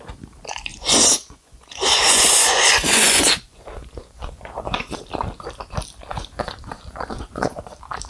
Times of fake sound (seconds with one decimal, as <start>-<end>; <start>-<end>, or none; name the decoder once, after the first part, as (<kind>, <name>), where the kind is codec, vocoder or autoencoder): 0.7-5.0 (vocoder, Vocos); 6.1-7.6